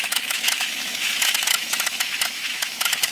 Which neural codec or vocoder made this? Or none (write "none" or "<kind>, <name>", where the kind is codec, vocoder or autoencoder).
autoencoder, DAC-VAE